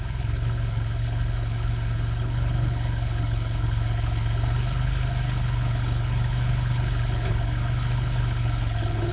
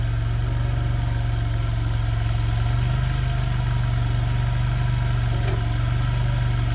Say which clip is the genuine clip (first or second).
second